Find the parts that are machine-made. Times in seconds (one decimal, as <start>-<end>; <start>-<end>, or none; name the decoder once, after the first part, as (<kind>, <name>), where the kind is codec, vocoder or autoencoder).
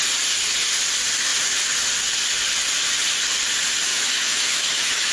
3.9-5.1 (autoencoder, DAC-VAE)